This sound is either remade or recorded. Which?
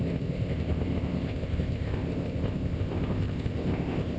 remade